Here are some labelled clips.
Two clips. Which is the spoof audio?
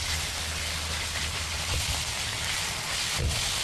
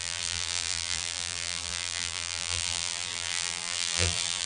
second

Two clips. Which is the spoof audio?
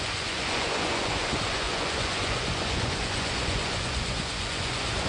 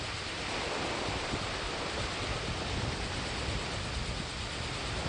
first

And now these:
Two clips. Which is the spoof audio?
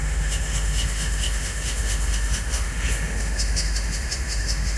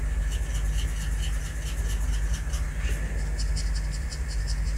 first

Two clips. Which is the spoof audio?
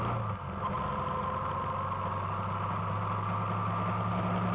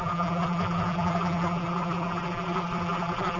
second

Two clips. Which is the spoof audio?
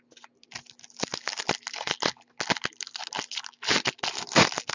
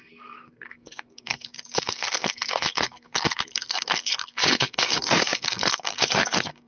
second